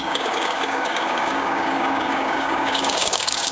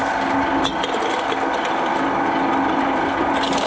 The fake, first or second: first